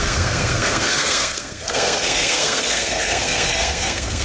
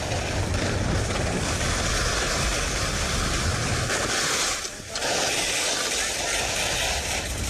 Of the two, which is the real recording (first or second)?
second